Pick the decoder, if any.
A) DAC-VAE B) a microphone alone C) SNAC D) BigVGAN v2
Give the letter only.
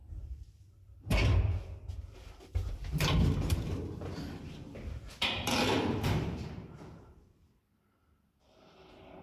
D